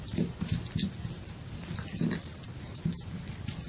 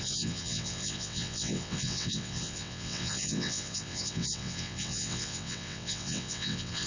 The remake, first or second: second